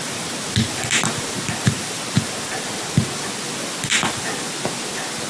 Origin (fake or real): real